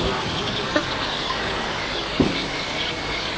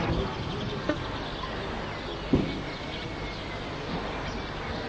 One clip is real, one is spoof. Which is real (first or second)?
second